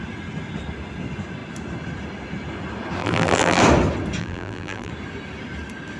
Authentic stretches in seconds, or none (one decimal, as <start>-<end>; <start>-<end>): 0.0-3.0; 3.6-4.2; 4.9-6.0

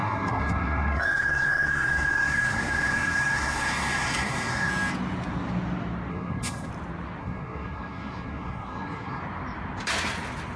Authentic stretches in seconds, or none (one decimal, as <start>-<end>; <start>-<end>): 4.7-6.1; 6.7-7.2; 9.2-10.6

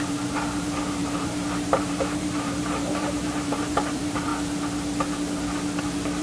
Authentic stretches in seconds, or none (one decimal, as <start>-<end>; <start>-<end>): 4.3-5.8

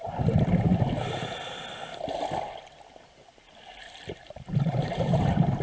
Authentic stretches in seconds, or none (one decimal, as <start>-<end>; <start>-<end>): 0.7-4.1